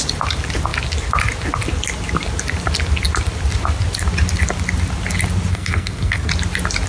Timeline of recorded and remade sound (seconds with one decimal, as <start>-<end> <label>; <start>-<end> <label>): 0.0-5.5 recorded; 5.5-6.3 remade; 6.3-6.9 recorded

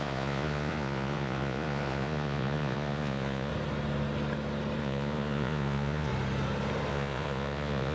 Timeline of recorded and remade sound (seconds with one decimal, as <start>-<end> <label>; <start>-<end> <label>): 0.0-3.5 remade; 3.5-4.8 recorded; 4.8-6.1 remade; 6.1-6.9 recorded; 6.9-7.9 remade

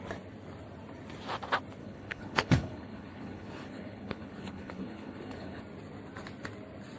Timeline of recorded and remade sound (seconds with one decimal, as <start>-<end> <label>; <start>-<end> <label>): 0.0-1.8 recorded; 1.8-5.6 remade; 5.6-7.0 recorded

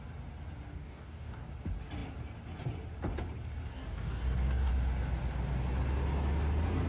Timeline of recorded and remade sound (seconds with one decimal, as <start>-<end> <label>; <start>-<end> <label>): 0.0-0.7 recorded; 0.7-1.5 remade; 1.5-3.7 recorded; 3.7-4.7 remade; 4.7-6.9 recorded

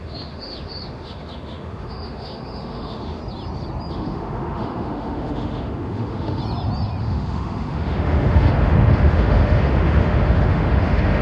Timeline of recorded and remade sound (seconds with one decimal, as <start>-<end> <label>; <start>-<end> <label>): 0.0-3.2 remade; 3.2-3.9 recorded; 3.9-6.4 remade; 6.4-7.0 recorded; 7.0-11.2 remade